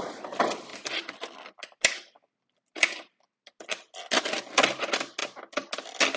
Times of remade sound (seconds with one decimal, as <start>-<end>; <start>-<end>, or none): none